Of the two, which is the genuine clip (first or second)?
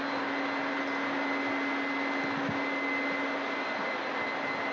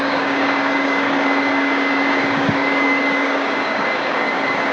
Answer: first